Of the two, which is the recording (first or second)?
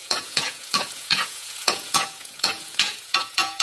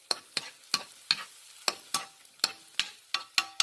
second